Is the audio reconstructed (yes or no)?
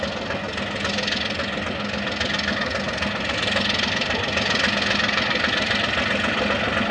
no